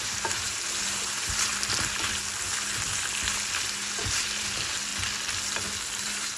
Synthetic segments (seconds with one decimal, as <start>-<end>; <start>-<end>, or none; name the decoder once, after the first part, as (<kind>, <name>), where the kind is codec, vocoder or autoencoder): 0.0-1.5 (vocoder, BigVGAN v2); 3.6-4.9; 6.0-6.4